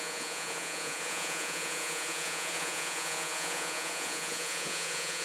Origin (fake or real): fake